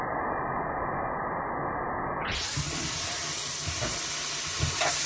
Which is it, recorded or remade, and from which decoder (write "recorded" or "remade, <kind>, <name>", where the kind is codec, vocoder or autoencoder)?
recorded